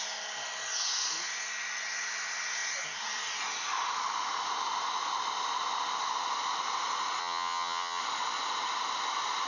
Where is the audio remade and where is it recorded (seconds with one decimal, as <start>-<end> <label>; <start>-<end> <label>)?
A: 0.0-7.2 recorded; 7.2-8.0 remade; 8.0-9.5 recorded